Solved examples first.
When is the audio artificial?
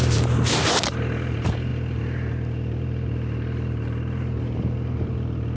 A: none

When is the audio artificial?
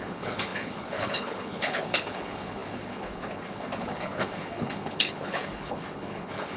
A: 0.0-6.6 (codec, HILCodec)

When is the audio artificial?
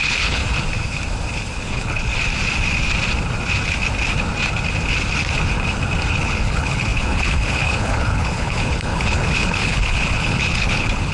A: 0.0-0.4 (codec, HILCodec); 1.5-2.1; 6.1-11.1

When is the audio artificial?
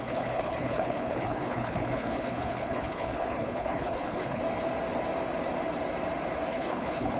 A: 0.0-4.4 (codec, HILCodec); 6.5-7.2